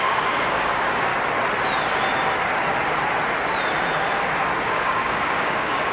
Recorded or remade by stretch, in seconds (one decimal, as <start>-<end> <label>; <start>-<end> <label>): 0.0-1.1 remade; 1.1-4.6 recorded; 4.6-5.9 remade